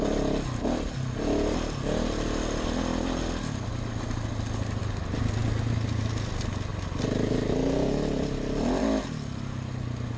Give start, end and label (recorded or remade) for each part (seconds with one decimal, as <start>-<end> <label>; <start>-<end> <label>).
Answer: 0.0-10.2 recorded